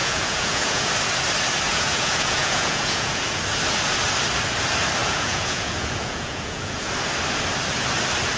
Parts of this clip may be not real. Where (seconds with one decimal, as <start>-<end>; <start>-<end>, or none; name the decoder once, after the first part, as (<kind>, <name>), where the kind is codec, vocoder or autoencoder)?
0.0-0.9 (vocoder, Vocos); 1.7-3.4; 5.0-6.9